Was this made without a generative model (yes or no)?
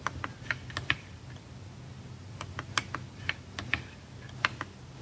yes